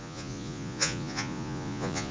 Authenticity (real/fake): fake